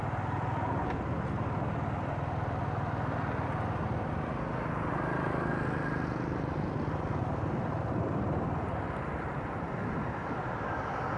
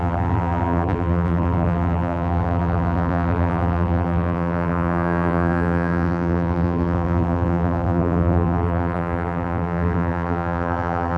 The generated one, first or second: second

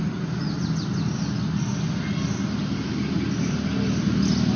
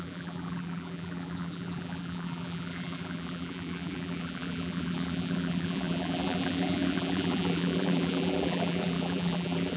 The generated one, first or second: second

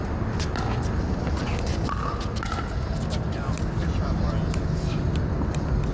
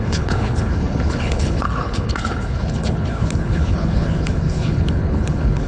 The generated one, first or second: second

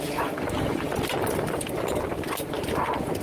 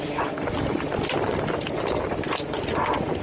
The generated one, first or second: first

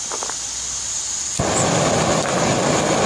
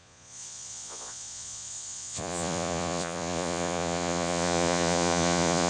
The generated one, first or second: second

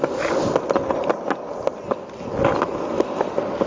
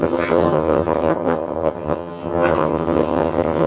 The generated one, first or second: second